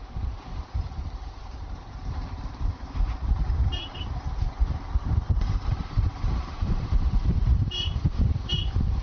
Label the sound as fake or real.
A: fake